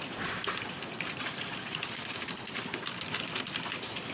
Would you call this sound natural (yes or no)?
yes